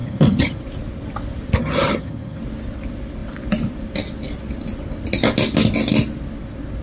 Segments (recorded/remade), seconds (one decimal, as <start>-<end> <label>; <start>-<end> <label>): 0.0-0.6 remade; 0.6-1.6 recorded; 1.6-2.4 remade; 2.4-6.8 recorded